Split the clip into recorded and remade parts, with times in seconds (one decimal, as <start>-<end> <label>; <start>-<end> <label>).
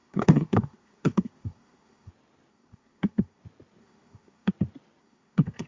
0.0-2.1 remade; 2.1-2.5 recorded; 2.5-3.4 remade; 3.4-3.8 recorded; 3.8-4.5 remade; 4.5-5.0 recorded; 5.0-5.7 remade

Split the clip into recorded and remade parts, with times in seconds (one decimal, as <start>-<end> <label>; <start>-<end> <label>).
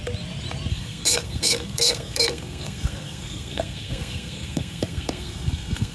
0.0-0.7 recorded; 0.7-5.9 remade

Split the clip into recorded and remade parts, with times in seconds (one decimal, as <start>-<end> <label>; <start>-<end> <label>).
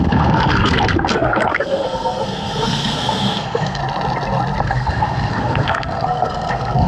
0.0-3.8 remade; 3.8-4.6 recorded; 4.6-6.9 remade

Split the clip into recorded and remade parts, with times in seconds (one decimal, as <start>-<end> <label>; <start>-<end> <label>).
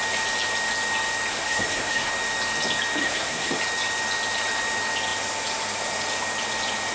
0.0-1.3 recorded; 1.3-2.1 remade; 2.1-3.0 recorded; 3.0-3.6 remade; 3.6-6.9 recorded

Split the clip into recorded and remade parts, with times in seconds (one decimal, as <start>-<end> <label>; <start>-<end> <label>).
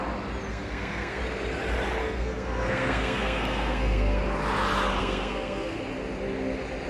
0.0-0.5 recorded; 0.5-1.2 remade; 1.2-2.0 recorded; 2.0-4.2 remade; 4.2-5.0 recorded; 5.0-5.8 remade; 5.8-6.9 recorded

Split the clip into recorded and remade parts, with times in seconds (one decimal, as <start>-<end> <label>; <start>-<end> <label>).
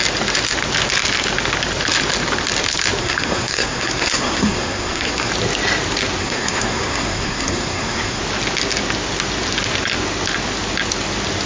0.0-3.0 recorded; 3.0-5.3 remade; 5.3-6.2 recorded; 6.2-8.2 remade; 8.2-11.5 recorded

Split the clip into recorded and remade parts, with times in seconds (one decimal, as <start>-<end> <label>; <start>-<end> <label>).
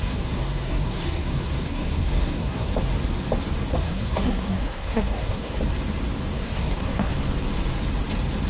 0.0-2.7 remade; 2.7-3.7 recorded; 3.7-5.5 remade; 5.5-6.3 recorded; 6.3-7.1 remade; 7.1-8.5 recorded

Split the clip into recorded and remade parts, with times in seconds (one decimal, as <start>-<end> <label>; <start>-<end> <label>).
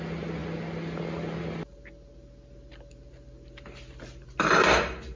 0.0-5.2 recorded